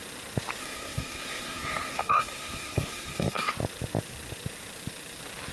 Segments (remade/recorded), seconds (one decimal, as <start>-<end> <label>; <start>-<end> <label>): 0.0-0.6 recorded; 0.6-3.5 remade; 3.5-5.5 recorded